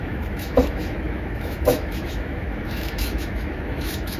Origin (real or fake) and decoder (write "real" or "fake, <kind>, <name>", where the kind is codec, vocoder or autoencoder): fake, autoencoder, DAC-VAE